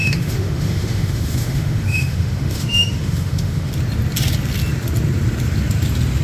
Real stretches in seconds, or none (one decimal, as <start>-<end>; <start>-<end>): 3.7-6.2